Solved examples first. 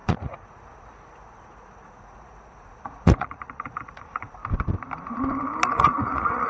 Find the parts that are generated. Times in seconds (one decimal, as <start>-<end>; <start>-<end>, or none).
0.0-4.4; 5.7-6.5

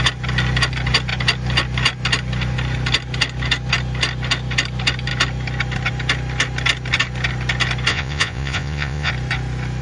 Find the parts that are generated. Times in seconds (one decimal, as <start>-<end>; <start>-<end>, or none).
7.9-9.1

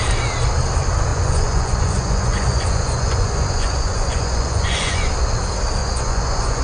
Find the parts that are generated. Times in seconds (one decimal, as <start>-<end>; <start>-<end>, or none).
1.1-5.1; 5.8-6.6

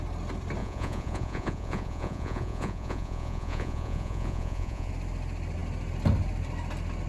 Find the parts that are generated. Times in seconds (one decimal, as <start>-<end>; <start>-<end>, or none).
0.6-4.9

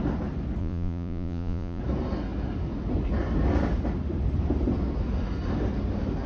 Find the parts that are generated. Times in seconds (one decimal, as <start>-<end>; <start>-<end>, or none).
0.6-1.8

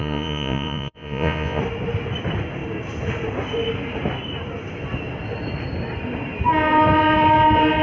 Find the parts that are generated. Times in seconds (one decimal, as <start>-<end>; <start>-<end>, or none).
0.0-1.6

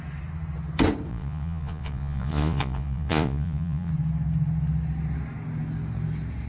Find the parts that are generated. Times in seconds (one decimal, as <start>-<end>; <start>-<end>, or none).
1.1-3.9